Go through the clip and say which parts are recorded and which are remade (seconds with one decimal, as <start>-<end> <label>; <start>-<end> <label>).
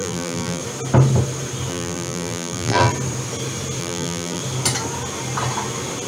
0.0-0.6 remade; 0.6-1.7 recorded; 1.7-2.9 remade; 2.9-3.8 recorded; 3.8-4.4 remade; 4.4-6.1 recorded